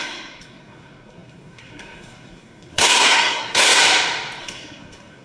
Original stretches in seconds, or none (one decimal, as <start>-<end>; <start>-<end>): 3.8-4.4